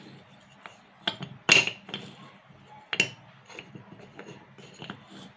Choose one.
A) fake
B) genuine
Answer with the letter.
B